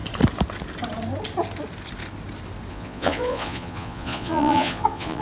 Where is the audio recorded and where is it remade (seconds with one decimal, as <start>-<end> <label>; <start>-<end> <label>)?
0.0-2.7 recorded; 2.7-5.2 remade